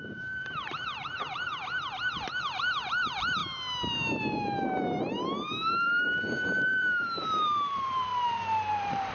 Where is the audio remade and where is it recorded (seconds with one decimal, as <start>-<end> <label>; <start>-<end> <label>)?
0.0-1.5 remade; 1.5-2.0 recorded; 2.0-3.4 remade; 3.4-4.2 recorded; 4.2-9.1 remade